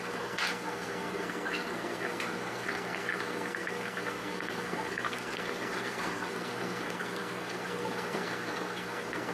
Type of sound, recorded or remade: remade